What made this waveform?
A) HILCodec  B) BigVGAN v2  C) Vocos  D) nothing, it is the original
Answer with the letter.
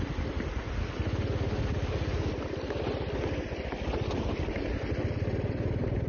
D